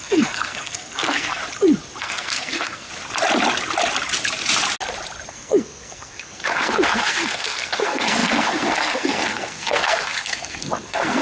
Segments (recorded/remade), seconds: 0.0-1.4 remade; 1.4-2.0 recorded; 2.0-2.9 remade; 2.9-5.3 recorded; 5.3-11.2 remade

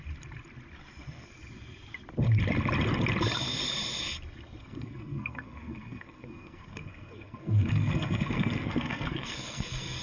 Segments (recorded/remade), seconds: 0.0-4.6 recorded; 4.6-10.0 remade

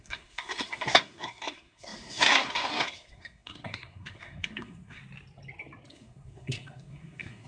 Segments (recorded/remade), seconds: 0.0-5.0 remade; 5.0-5.9 recorded; 5.9-7.5 remade

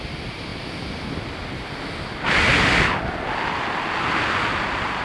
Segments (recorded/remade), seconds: 0.0-5.0 recorded

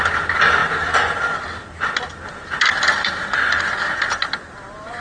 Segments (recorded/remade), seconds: 0.0-5.0 recorded

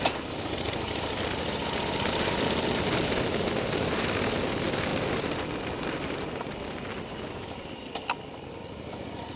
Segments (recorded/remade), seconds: 0.0-9.4 recorded

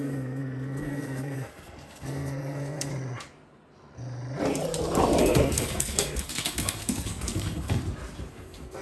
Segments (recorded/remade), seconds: 0.0-2.9 remade; 2.9-5.2 recorded; 5.2-7.8 remade; 7.8-8.3 recorded; 8.3-8.8 remade

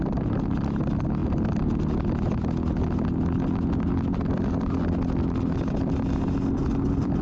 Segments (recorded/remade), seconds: 0.0-7.2 recorded